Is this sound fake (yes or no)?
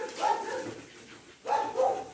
no